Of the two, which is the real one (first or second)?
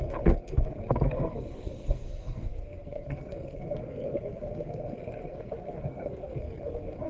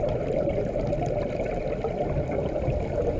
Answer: second